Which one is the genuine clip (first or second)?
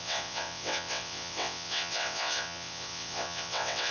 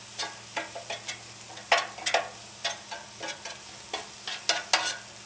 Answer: second